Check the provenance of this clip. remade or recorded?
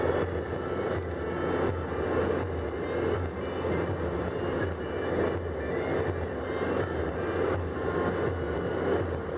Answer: recorded